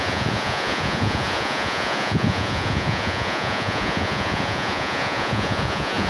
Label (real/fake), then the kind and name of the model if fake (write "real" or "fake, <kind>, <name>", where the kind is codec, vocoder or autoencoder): fake, vocoder, Vocos